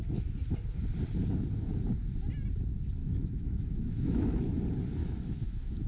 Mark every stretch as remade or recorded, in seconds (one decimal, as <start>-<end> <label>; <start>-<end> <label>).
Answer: 0.0-3.0 recorded; 3.0-4.4 remade; 4.4-5.0 recorded; 5.0-5.9 remade